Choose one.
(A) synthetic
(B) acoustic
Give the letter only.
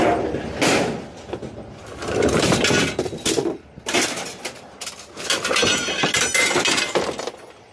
B